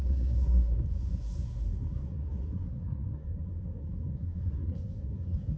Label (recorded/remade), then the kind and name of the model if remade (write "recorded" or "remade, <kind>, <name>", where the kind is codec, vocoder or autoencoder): remade, codec, SNAC